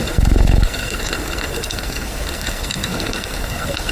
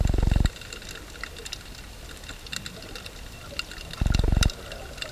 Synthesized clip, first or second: first